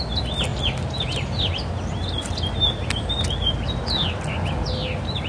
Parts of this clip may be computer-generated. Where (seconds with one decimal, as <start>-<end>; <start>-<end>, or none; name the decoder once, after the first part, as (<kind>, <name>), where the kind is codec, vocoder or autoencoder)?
none